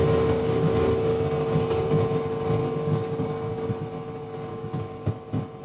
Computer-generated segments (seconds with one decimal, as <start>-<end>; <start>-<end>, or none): 1.1-2.0; 2.6-3.7; 4.5-5.1

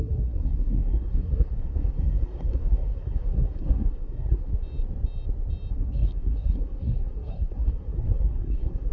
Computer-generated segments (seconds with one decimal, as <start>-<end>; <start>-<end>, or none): 0.0-4.5; 5.7-8.9